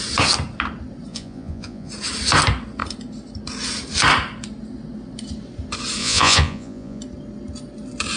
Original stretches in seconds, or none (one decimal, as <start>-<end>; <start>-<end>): 0.0-1.1; 1.9-6.0; 7.0-8.2